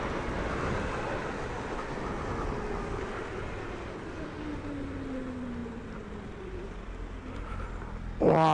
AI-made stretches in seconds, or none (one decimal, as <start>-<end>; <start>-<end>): none